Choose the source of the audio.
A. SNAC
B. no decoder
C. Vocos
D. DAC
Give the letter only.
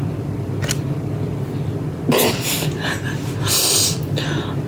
B